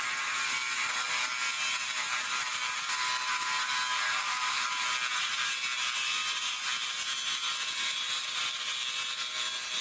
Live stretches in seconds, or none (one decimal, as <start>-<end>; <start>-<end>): 0.0-9.8